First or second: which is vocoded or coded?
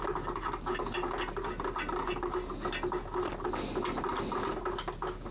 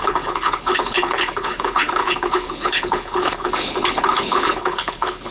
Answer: second